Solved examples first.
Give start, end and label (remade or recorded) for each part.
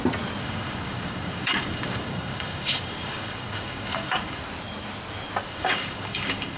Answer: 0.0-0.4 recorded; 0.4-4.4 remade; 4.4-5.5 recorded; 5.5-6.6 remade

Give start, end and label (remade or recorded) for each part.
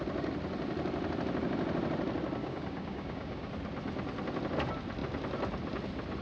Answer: 0.0-2.4 recorded; 2.4-3.5 remade; 3.5-6.2 recorded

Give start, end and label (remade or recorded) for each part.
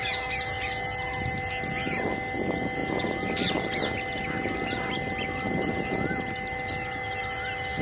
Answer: 0.0-7.8 recorded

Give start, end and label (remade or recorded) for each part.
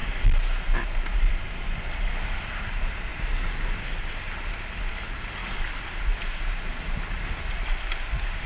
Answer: 0.0-5.4 recorded; 5.4-5.9 remade; 5.9-8.5 recorded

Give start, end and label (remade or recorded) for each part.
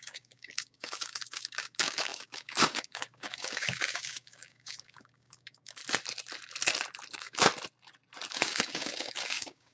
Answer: 0.0-5.8 remade; 5.8-7.1 recorded; 7.1-7.5 remade; 7.5-8.3 recorded; 8.3-9.7 remade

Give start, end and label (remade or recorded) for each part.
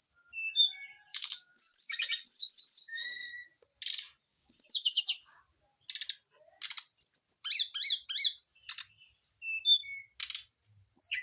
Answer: 0.0-1.1 recorded; 1.1-3.3 remade; 3.3-4.3 recorded; 4.3-5.4 remade; 5.4-11.2 recorded